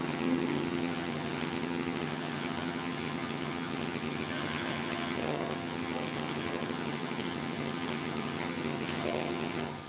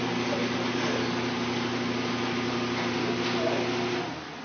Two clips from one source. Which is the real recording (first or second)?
second